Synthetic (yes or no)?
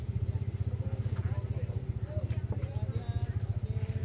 no